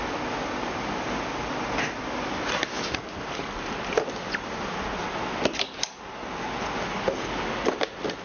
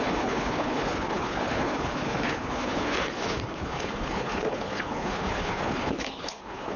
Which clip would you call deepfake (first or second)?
second